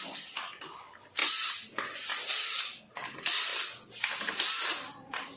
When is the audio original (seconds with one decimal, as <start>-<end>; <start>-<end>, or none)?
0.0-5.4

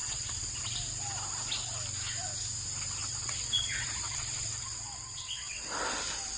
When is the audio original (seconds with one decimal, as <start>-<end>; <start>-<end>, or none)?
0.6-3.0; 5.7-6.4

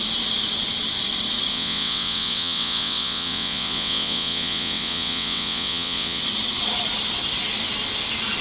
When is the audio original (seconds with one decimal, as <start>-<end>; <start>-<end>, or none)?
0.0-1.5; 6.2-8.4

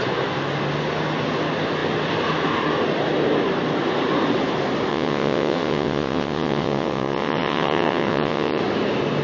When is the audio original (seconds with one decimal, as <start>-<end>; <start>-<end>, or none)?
0.0-4.9; 8.6-9.2

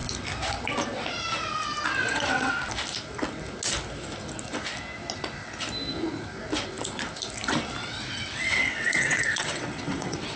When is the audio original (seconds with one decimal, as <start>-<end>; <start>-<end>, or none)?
0.0-2.0; 2.5-7.8

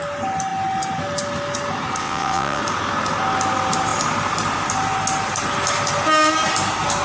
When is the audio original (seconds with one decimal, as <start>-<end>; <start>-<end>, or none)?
0.0-2.0; 2.6-7.0

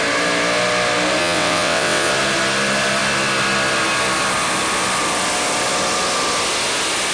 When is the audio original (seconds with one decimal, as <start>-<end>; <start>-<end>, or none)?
0.0-1.2; 2.1-7.1